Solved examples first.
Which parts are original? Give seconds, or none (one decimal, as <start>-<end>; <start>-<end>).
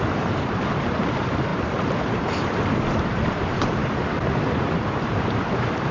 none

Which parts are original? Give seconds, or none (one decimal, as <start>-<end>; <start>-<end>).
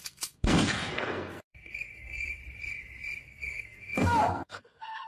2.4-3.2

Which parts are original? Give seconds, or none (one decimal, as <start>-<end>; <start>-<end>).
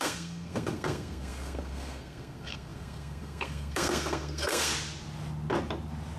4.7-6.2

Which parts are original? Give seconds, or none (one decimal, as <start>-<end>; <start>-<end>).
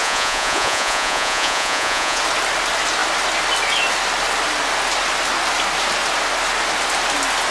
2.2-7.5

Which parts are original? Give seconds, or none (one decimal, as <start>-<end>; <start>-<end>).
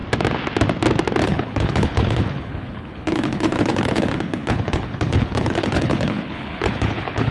0.0-1.2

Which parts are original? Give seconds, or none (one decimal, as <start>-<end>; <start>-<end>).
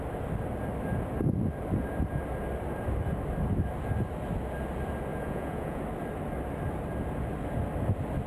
0.0-5.1; 5.8-8.3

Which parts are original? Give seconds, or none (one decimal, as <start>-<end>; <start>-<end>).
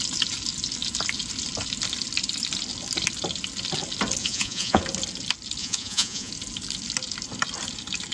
0.0-4.2; 4.8-5.6; 6.3-8.1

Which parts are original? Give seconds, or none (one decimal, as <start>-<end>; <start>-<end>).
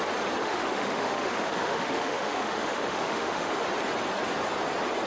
0.0-0.4; 3.5-5.1